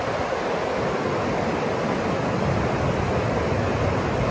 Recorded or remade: recorded